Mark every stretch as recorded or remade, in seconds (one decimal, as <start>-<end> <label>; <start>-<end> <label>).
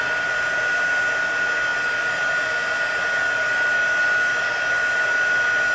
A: 0.0-5.7 recorded